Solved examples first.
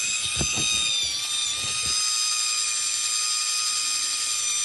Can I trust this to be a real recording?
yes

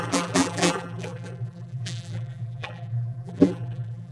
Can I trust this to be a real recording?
no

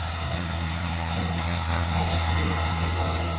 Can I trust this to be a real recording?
no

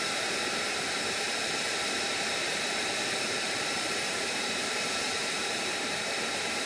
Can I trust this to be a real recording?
no